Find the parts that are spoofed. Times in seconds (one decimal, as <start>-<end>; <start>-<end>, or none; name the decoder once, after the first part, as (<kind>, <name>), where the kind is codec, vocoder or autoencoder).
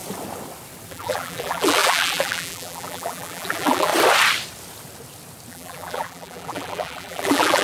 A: 0.9-3.9 (vocoder, BigVGAN v2); 5.5-7.6